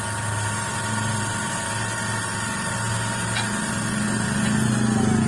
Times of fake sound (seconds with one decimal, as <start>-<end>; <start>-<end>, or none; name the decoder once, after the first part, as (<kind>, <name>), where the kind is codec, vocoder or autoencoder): none